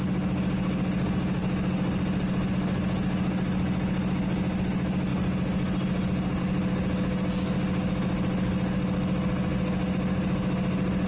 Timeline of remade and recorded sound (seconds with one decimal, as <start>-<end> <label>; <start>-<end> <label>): 0.0-11.1 recorded

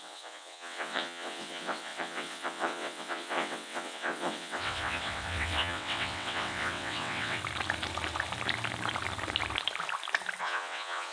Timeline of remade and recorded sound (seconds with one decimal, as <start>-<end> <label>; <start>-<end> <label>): 0.0-7.4 remade; 7.4-10.4 recorded; 10.4-11.1 remade